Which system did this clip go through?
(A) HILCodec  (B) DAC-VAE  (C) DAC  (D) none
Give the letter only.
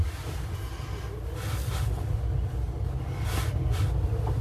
D